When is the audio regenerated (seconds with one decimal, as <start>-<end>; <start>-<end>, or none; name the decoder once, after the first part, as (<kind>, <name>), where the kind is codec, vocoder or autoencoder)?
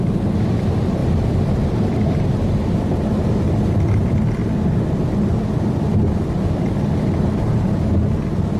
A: 1.0-4.0 (vocoder, BigVGAN v2); 4.4-7.2